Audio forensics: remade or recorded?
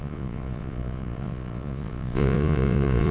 remade